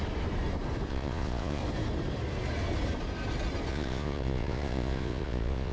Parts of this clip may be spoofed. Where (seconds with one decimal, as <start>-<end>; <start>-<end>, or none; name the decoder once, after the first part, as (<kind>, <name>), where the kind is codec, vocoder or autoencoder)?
0.9-1.6 (vocoder, Vocos); 3.7-5.7